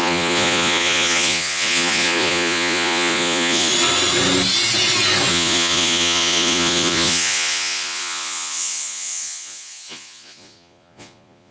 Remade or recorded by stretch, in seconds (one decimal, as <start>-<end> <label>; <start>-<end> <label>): 0.0-3.7 remade; 3.7-5.3 recorded; 5.3-11.5 remade